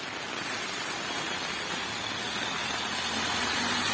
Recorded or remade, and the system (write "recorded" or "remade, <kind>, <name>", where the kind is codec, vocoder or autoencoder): recorded